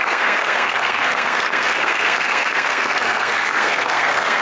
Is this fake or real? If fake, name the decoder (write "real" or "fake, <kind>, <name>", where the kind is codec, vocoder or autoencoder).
fake, codec, SNAC